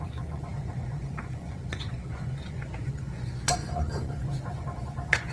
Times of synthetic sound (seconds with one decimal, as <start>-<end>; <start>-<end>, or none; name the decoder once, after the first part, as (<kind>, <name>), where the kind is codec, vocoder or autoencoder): 0.0-5.3 (vocoder, Vocos)